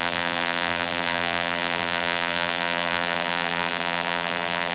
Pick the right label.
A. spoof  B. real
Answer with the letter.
A